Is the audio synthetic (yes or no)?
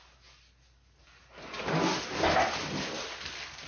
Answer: no